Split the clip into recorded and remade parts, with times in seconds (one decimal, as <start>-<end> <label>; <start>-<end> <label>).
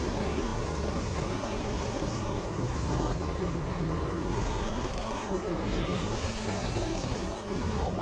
0.0-8.0 remade